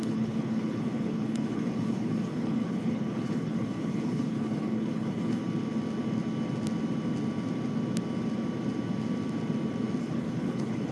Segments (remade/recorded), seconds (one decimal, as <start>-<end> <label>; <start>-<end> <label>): 0.0-5.4 remade; 5.4-10.0 recorded; 10.0-10.9 remade